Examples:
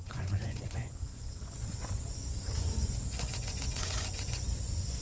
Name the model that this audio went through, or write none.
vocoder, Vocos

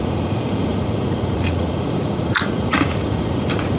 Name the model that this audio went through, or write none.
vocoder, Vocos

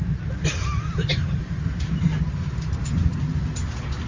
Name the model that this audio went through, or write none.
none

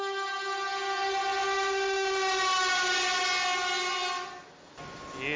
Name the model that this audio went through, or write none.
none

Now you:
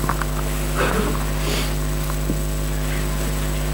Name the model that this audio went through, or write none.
none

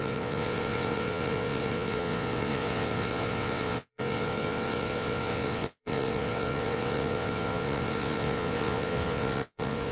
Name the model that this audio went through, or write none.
vocoder, WaveNeXt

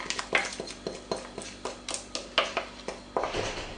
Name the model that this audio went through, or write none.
none